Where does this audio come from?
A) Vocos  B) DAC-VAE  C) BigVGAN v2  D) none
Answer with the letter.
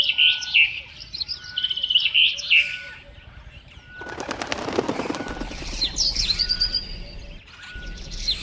D